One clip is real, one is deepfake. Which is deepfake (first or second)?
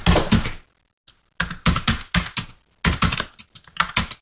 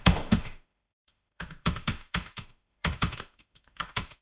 second